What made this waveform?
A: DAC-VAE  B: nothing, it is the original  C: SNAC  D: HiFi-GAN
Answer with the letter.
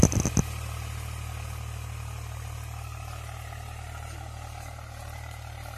B